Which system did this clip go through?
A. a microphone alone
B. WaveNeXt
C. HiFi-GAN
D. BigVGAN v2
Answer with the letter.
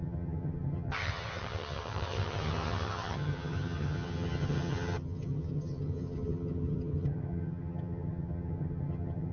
C